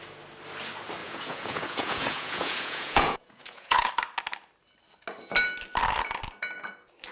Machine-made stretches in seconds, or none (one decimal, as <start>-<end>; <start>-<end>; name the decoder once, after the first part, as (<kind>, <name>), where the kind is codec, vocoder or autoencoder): 1.0-3.9 (vocoder, Vocos)